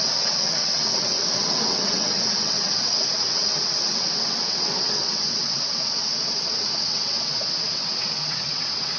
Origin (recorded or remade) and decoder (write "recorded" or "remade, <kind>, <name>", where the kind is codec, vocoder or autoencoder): remade, vocoder, WaveNeXt